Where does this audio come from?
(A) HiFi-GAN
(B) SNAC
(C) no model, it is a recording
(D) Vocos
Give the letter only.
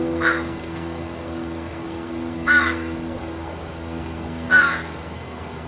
B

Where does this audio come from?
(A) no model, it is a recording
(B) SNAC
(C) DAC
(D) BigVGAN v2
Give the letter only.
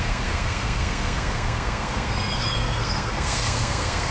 B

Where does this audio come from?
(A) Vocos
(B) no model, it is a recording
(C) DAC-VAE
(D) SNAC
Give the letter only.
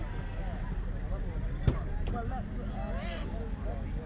B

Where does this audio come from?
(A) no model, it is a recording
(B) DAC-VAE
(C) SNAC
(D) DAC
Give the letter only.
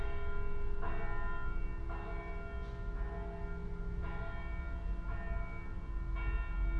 A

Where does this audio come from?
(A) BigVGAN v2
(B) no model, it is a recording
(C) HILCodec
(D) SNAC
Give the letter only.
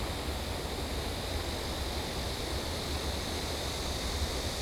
B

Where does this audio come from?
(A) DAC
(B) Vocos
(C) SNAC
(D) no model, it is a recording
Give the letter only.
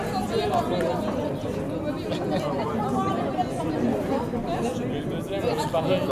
D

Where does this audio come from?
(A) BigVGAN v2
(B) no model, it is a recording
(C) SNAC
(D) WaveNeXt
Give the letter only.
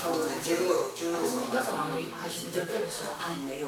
C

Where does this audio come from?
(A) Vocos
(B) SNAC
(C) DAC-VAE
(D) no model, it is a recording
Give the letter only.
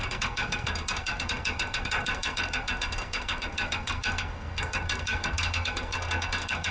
B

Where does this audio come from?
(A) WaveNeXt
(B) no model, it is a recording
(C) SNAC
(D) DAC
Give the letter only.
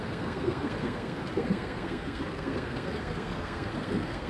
C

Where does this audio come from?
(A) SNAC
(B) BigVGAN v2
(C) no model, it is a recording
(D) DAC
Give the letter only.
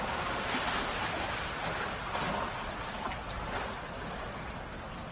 C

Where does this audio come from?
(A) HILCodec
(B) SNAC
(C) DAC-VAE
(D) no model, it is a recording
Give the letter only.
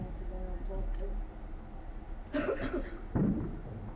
D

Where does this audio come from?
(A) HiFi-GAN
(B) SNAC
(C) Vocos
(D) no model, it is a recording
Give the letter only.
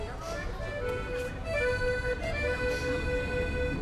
D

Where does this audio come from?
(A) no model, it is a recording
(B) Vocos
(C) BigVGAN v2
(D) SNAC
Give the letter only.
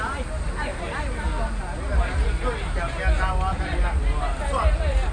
A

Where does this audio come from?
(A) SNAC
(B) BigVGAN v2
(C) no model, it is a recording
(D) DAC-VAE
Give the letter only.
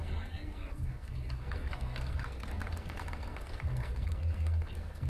A